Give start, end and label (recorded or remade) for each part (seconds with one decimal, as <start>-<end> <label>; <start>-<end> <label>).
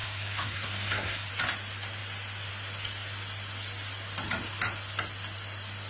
0.0-1.3 remade; 1.3-5.9 recorded